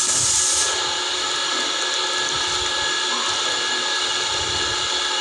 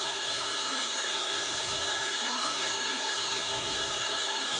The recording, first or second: first